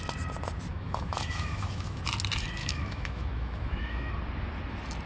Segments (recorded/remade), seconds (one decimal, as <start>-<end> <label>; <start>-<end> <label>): 0.0-0.7 recorded; 0.7-2.0 remade; 2.0-2.6 recorded; 2.6-4.1 remade; 4.1-5.1 recorded

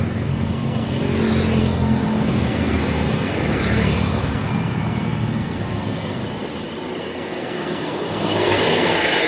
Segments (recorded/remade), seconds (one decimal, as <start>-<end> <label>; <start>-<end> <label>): 0.0-1.1 remade; 1.1-1.6 recorded; 1.6-6.2 remade; 6.2-7.0 recorded; 7.0-9.3 remade

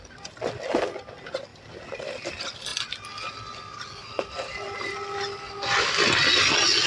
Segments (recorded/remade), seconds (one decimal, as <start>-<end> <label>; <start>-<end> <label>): 0.0-6.9 recorded

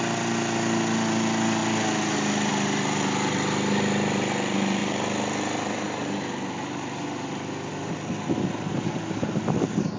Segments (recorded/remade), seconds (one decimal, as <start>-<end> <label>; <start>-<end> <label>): 0.0-10.0 recorded

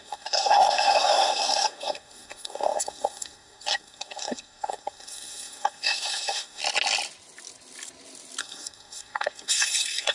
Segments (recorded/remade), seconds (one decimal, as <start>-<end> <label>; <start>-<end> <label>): 0.0-6.6 remade; 6.6-8.4 recorded; 8.4-10.1 remade

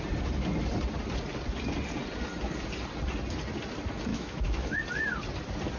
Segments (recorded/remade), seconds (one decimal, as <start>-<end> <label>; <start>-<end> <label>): 0.0-4.1 recorded; 4.1-4.8 remade; 4.8-5.8 recorded

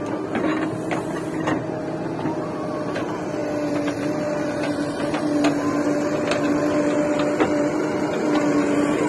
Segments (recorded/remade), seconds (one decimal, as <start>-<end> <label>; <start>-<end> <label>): 0.0-9.1 recorded